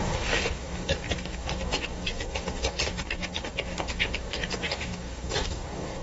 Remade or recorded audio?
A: remade